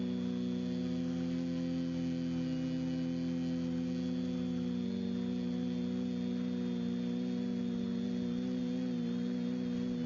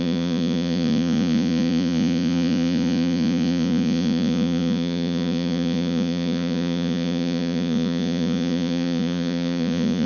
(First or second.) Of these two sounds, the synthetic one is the second